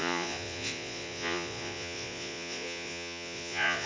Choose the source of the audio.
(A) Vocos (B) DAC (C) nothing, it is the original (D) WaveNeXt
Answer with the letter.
A